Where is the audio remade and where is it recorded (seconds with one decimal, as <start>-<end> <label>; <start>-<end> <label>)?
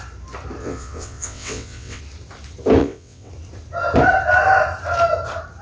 0.0-0.6 recorded; 0.6-2.0 remade; 2.0-2.8 recorded; 2.8-3.3 remade; 3.3-5.6 recorded